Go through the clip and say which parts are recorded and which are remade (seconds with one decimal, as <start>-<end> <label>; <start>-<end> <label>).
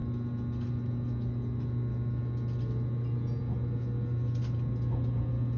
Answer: 0.0-5.6 recorded